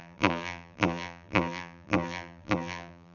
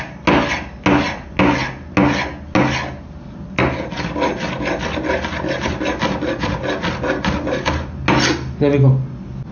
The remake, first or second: first